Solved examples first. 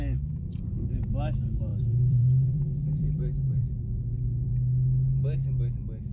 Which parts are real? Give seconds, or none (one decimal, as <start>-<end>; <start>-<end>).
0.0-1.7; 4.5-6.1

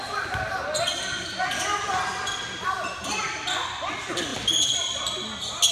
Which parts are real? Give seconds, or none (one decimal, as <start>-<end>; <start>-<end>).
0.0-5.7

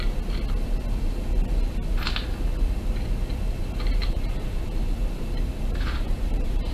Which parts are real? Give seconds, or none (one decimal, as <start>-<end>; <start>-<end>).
0.0-4.0